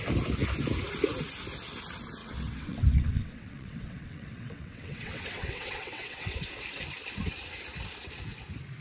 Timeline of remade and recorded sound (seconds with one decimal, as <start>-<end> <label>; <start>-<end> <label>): 0.0-2.2 recorded; 2.2-6.5 remade; 6.5-8.8 recorded